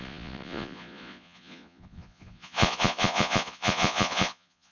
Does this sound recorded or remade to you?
remade